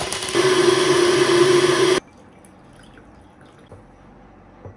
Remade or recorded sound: recorded